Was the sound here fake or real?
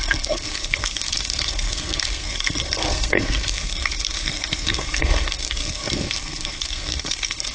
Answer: fake